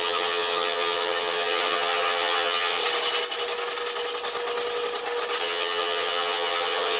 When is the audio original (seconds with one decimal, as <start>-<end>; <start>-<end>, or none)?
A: 2.8-5.4